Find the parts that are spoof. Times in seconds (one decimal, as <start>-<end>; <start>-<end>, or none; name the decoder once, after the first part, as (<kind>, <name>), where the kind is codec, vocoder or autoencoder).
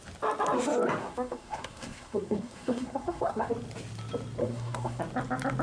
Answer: 1.0-3.5 (codec, SNAC); 4.4-5.0